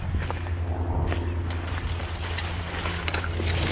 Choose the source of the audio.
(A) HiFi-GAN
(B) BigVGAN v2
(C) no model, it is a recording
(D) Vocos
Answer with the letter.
C